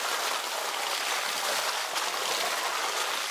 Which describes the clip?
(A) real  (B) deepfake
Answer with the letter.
A